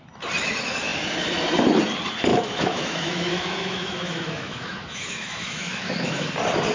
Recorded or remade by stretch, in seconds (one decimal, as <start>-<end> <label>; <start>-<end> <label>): 0.0-2.3 recorded; 2.3-6.3 remade; 6.3-6.7 recorded